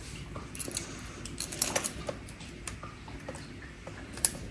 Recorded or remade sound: recorded